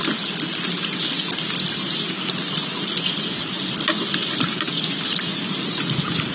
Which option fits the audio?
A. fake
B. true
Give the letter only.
B